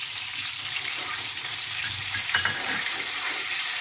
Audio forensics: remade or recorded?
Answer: remade